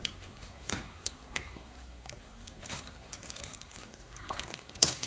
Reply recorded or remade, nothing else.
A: remade